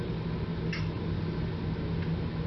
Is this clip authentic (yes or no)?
yes